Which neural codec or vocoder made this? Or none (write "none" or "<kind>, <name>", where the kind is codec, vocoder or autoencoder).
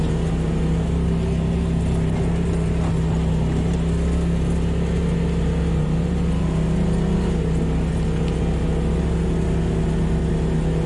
none